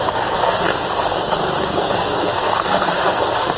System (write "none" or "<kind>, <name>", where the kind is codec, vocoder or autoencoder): codec, SNAC